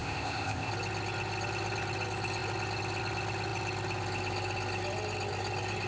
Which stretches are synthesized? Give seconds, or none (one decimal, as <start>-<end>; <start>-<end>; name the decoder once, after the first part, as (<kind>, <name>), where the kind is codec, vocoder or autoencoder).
0.0-0.7 (codec, ZipCodec)